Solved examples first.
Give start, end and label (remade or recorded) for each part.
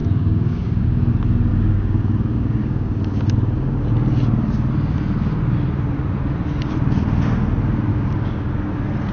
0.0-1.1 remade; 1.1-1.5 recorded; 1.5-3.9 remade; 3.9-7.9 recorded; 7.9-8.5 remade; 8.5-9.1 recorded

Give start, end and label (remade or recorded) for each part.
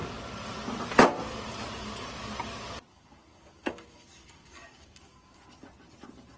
0.0-2.9 recorded; 2.9-5.4 remade; 5.4-6.4 recorded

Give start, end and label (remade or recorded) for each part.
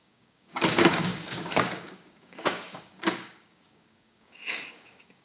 0.0-5.2 remade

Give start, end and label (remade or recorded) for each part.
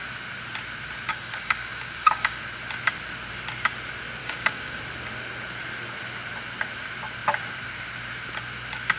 0.0-1.1 recorded; 1.1-2.4 remade; 2.4-4.2 recorded; 4.2-4.8 remade; 4.8-9.0 recorded